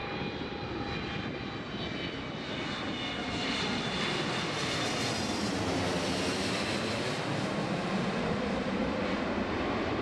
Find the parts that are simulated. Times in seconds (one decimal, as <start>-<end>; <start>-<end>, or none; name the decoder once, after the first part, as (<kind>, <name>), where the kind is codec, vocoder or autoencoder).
none